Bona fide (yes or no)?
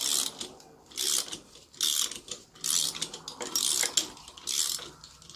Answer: yes